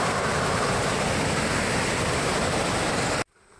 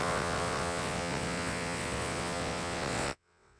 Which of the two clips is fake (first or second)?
second